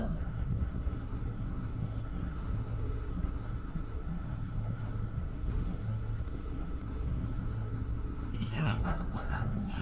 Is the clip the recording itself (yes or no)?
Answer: no